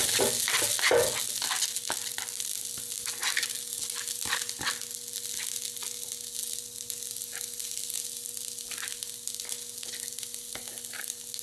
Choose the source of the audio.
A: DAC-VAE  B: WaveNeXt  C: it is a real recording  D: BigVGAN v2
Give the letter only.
C